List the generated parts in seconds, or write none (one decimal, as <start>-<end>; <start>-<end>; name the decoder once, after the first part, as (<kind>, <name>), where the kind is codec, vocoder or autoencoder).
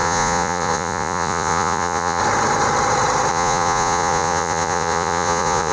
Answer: 0.0-2.2 (vocoder, Vocos); 3.3-5.7